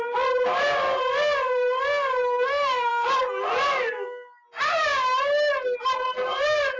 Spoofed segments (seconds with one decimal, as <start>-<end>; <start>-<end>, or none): 2.2-2.9

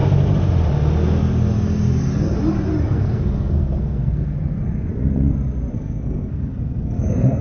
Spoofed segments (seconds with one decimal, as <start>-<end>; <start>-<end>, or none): 2.9-4.9; 5.7-7.4

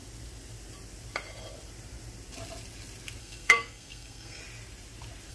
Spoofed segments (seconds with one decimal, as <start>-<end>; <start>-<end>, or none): 3.2-4.4

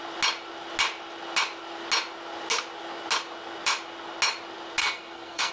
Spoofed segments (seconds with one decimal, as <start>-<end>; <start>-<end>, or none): 4.8-5.5

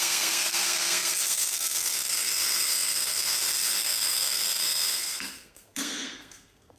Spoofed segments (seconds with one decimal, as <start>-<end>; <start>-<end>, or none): 0.0-6.8